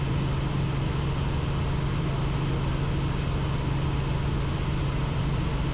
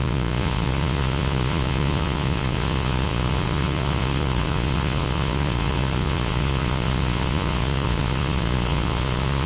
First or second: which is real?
first